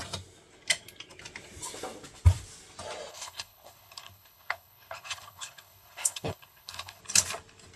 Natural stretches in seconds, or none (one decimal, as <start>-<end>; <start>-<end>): 0.0-3.1; 7.0-7.8